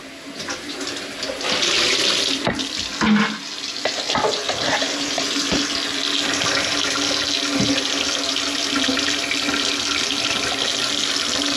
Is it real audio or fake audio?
real